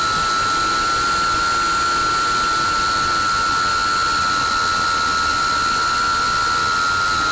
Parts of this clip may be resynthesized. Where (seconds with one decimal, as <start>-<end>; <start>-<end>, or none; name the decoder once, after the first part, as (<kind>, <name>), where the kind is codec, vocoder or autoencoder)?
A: none